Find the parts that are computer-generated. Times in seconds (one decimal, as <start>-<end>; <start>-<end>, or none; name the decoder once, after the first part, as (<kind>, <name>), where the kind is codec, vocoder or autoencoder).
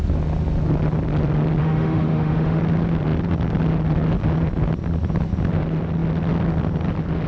1.6-2.6 (autoencoder, DAC-VAE)